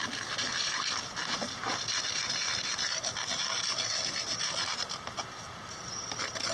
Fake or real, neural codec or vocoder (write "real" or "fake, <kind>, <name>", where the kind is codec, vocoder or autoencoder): real